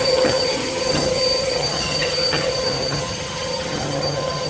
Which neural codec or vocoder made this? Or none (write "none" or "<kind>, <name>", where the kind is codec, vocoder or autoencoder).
vocoder, HiFi-GAN